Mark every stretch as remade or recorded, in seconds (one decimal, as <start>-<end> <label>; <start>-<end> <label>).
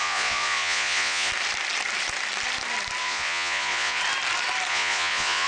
0.0-1.3 remade; 1.3-3.0 recorded; 3.0-4.0 remade; 4.0-4.7 recorded; 4.7-5.5 remade